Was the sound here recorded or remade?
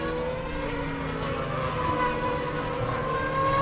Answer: recorded